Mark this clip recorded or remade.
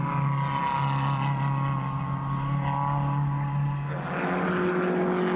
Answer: recorded